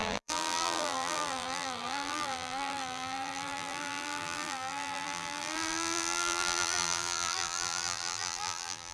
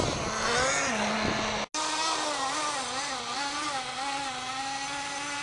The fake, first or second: first